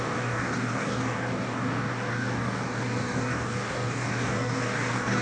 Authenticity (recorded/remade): remade